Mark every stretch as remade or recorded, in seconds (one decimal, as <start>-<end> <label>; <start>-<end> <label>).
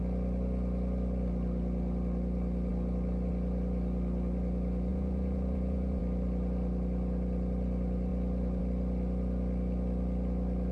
0.0-4.9 recorded; 4.9-6.0 remade; 6.0-10.7 recorded